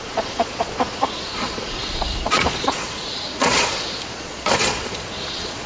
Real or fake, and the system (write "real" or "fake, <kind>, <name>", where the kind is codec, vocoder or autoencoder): fake, vocoder, Vocos